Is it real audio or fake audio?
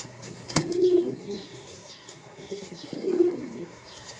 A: fake